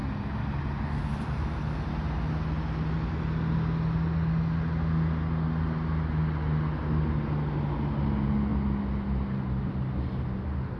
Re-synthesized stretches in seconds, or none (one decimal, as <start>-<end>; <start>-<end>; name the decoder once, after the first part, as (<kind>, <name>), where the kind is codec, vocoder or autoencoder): none